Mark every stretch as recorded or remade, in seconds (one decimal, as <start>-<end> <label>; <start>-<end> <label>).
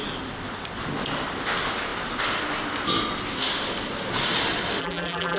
0.0-4.8 recorded; 4.8-5.4 remade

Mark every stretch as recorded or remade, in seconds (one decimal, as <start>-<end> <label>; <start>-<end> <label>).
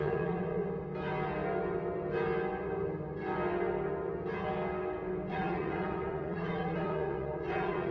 0.0-0.6 remade; 0.6-5.3 recorded; 5.3-7.9 remade